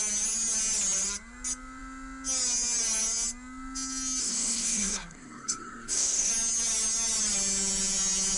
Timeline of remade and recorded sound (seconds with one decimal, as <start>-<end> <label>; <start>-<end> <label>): 0.0-4.2 recorded; 4.2-6.3 remade; 6.3-8.4 recorded